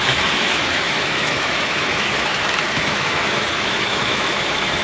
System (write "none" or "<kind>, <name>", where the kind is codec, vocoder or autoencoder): autoencoder, DAC-VAE